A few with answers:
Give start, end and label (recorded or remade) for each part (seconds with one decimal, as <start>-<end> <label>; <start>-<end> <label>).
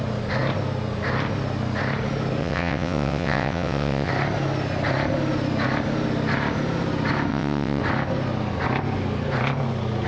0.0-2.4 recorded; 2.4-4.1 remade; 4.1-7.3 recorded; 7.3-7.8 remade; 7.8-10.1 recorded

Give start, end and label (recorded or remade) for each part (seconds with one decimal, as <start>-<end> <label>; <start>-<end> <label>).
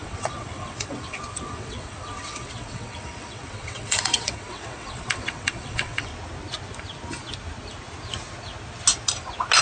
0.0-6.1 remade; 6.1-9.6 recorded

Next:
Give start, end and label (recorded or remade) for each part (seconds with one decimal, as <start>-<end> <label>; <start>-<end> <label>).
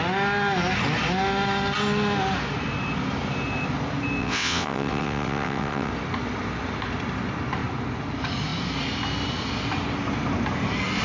0.0-4.2 recorded; 4.2-5.9 remade; 5.9-11.0 recorded